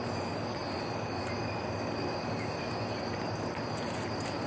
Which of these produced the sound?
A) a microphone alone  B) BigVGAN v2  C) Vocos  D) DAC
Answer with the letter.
A